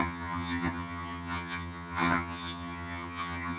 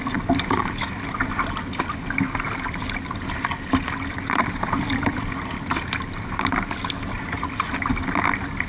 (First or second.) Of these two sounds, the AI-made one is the first